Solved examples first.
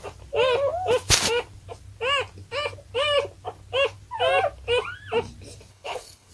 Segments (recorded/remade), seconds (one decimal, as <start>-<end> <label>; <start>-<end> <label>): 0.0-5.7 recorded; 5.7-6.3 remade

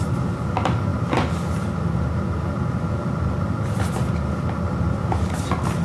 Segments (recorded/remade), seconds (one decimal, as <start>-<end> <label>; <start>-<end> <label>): 0.0-5.8 recorded

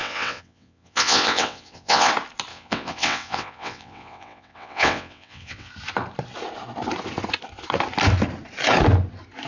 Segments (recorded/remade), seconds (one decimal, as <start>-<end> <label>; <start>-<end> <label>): 0.0-2.1 remade; 2.1-2.5 recorded; 2.5-5.7 remade; 5.7-9.5 recorded

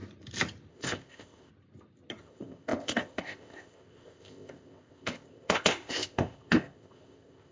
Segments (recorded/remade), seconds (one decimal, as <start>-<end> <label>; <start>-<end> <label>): 0.0-0.7 recorded; 0.7-1.5 remade; 1.5-2.2 recorded; 2.2-7.5 remade

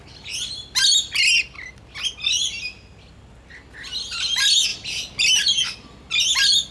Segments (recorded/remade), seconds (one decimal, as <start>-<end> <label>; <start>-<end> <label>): 0.0-4.7 recorded; 4.7-5.3 remade; 5.3-6.7 recorded

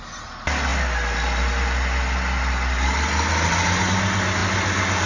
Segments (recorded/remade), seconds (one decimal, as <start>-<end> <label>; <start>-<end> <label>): 0.0-5.1 recorded

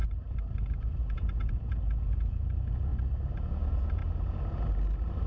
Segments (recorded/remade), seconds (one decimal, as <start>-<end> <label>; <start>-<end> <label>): 0.0-0.8 recorded; 0.8-2.9 remade; 2.9-3.5 recorded; 3.5-4.0 remade; 4.0-5.3 recorded

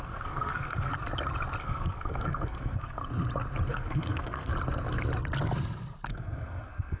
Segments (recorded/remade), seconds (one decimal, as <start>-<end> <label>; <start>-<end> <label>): 0.0-0.9 remade; 0.9-1.6 recorded; 1.6-3.0 remade; 3.0-3.7 recorded; 3.7-4.5 remade; 4.5-6.1 recorded; 6.1-7.0 remade